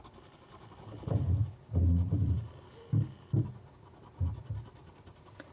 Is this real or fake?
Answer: real